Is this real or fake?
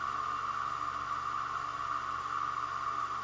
real